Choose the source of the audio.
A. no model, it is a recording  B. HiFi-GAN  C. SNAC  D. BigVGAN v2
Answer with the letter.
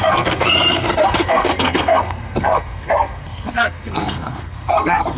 C